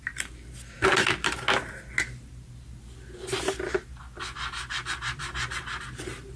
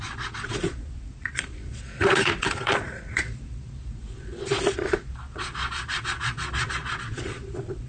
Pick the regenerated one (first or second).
second